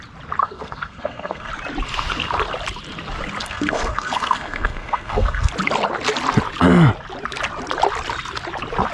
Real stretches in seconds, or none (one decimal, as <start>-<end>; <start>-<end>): 0.0-0.4; 1.5-3.4; 5.5-8.9